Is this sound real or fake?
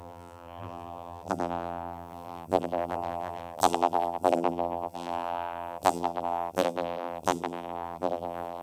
fake